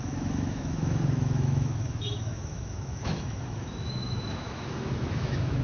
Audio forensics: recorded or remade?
remade